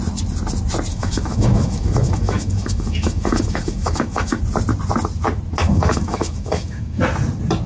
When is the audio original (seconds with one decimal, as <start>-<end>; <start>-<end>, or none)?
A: 0.0-0.9; 4.4-5.6; 7.0-7.7